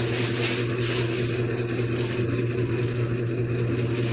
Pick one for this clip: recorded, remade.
recorded